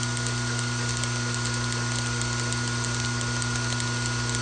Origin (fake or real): real